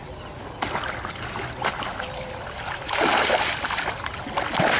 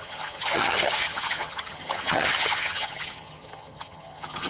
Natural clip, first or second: first